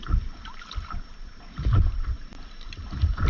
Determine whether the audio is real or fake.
fake